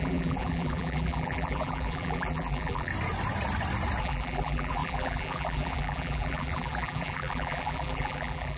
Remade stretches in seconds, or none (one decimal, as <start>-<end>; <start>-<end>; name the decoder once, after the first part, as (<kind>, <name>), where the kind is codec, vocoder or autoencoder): 0.0-2.9 (vocoder, BigVGAN v2); 4.0-8.6